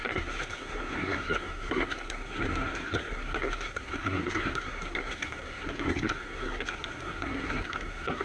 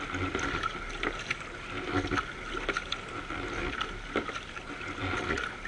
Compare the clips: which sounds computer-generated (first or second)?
first